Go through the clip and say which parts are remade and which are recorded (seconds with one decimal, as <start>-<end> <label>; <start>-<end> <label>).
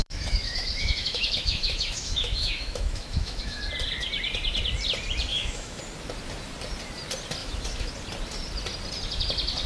0.0-3.6 remade; 3.6-5.3 recorded; 5.3-5.8 remade; 5.8-7.4 recorded; 7.4-7.9 remade; 7.9-9.7 recorded